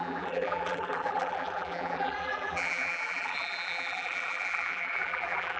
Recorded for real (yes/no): no